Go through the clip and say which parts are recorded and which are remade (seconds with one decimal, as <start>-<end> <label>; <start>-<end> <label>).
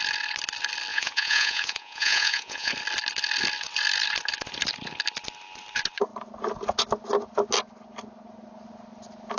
0.0-0.9 recorded; 0.9-2.7 remade; 2.7-9.4 recorded